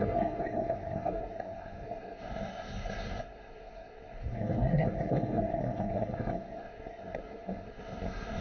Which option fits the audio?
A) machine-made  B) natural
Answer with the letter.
A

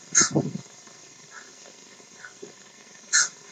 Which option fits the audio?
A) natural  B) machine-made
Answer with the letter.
B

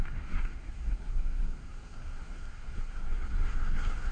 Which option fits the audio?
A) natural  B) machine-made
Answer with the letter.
B